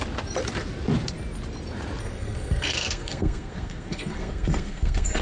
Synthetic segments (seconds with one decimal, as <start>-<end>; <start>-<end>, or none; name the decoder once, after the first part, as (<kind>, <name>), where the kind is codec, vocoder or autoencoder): 2.0-5.2 (codec, SNAC)